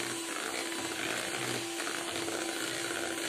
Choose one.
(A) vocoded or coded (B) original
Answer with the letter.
B